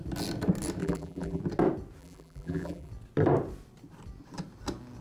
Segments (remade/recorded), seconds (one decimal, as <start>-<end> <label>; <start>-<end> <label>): 0.0-0.8 recorded; 0.8-1.4 remade; 1.4-2.0 recorded; 2.0-2.9 remade; 2.9-5.0 recorded